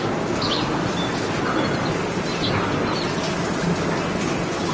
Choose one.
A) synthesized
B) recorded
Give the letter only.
B